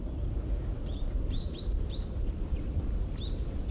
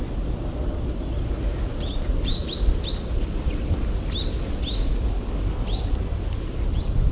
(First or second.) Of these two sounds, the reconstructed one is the first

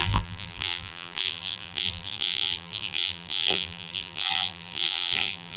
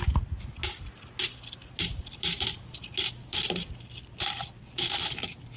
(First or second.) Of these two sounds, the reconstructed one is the first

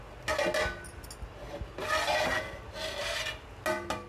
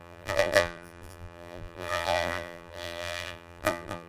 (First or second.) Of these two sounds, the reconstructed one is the second